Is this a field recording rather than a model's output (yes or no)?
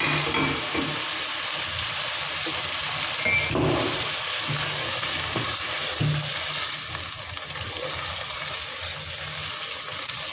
yes